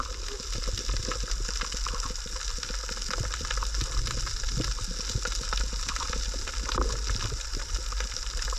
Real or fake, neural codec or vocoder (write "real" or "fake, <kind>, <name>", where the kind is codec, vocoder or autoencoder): real